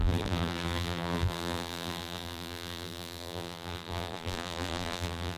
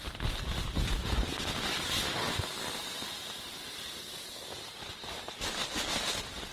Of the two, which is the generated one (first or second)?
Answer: first